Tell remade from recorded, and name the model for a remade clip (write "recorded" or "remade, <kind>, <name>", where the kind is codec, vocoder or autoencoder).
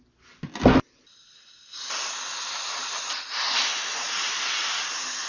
recorded